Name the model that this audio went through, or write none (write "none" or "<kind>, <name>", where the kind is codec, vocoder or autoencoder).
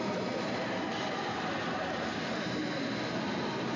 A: none